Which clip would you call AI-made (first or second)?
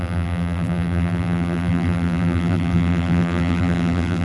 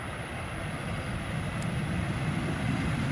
first